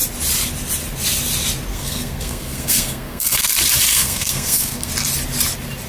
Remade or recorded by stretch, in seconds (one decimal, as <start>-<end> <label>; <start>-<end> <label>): 0.0-1.7 recorded; 1.7-3.5 remade; 3.5-3.9 recorded; 3.9-4.9 remade; 4.9-5.9 recorded